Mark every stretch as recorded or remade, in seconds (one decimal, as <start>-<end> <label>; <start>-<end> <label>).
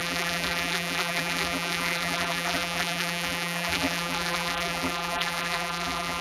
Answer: 0.0-6.2 remade